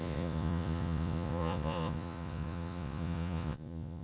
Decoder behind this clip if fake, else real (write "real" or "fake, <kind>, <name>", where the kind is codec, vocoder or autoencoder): fake, vocoder, Vocos